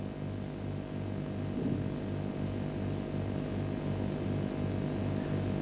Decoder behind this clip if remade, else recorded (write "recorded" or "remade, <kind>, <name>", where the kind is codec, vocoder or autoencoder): recorded